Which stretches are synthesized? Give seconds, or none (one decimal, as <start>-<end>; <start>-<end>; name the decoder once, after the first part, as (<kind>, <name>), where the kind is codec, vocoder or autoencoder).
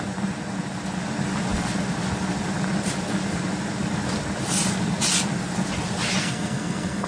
6.2-7.1 (codec, SNAC)